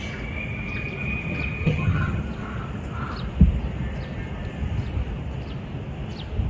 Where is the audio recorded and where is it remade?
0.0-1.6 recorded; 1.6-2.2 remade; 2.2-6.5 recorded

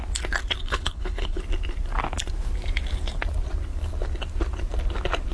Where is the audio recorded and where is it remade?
0.0-0.6 recorded; 0.6-1.4 remade; 1.4-5.3 recorded

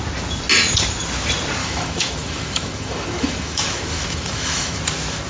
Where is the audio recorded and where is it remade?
0.0-1.6 recorded; 1.6-4.8 remade; 4.8-5.3 recorded

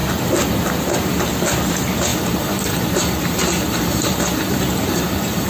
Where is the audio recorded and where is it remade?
0.0-2.1 recorded; 2.1-5.5 remade

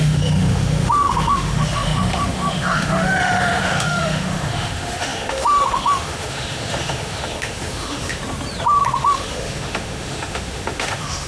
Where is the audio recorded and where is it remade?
0.0-8.2 remade; 8.2-9.0 recorded; 9.0-11.3 remade

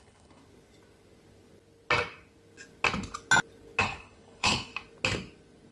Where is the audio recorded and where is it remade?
0.0-0.4 remade; 0.4-3.8 recorded; 3.8-4.7 remade; 4.7-5.7 recorded

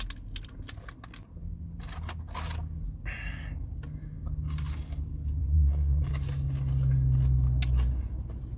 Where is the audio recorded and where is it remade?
0.0-5.4 recorded; 5.4-6.1 remade; 6.1-8.6 recorded

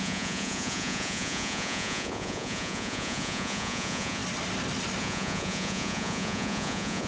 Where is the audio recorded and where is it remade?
0.0-4.2 remade; 4.2-5.0 recorded; 5.0-7.1 remade